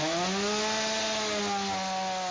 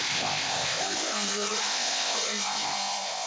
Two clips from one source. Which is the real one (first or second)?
first